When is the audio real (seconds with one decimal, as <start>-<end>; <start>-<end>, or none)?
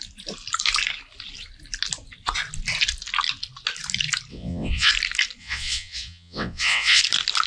0.0-4.3; 4.9-5.4; 7.0-7.5